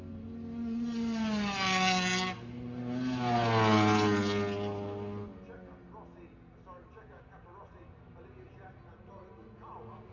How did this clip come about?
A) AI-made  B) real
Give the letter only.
B